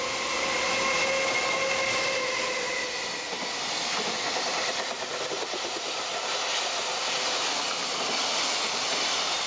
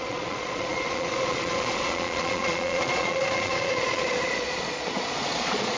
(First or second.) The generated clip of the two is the second